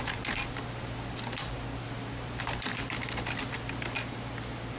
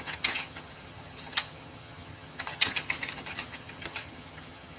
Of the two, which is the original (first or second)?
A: first